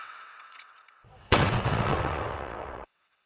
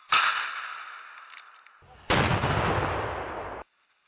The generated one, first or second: first